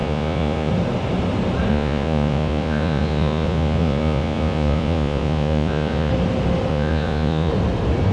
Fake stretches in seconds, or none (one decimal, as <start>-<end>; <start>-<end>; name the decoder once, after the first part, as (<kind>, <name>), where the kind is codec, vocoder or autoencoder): 0.0-0.7 (vocoder, Vocos); 1.7-6.1; 6.7-7.5